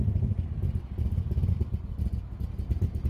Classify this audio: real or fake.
real